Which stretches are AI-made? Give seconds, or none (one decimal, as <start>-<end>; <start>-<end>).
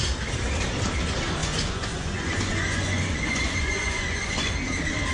1.4-4.5